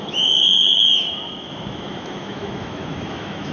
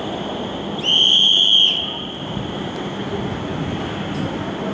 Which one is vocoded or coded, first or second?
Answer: first